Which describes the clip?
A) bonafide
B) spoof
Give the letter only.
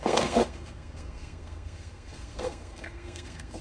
B